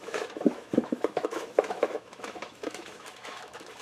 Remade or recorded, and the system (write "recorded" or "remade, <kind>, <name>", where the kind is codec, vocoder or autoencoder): remade, autoencoder, DAC-VAE